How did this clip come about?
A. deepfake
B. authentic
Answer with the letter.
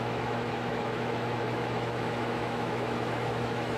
A